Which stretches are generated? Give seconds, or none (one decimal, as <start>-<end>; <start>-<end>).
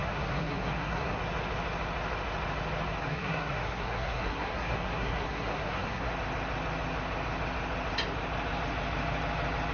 0.0-1.2; 3.0-6.1